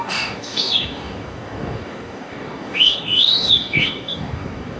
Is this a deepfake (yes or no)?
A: yes